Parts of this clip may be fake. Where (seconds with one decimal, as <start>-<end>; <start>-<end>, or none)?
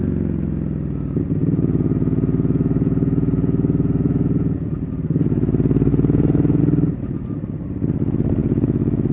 1.4-4.7; 5.9-6.6; 8.4-9.1